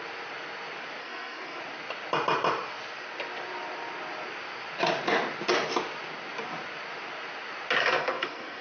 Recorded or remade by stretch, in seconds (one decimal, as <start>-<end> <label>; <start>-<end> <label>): 0.0-1.0 recorded; 1.0-1.6 remade; 1.6-7.8 recorded; 7.8-8.6 remade